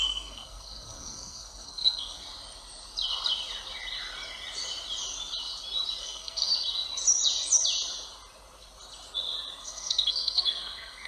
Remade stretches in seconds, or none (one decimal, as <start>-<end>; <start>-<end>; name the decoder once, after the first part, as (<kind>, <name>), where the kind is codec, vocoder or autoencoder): 0.0-2.2 (codec, SNAC); 6.0-6.5; 9.6-11.1